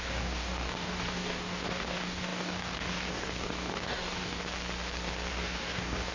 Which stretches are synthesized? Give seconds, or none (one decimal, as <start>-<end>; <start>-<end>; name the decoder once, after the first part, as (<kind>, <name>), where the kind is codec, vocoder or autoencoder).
0.0-4.4 (codec, DAC); 5.3-6.1